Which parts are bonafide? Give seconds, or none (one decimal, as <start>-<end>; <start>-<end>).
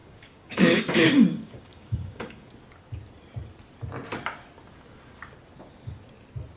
2.5-6.6